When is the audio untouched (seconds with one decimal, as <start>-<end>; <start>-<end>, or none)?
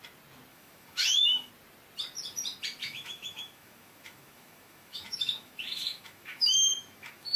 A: 0.0-0.5; 1.5-2.8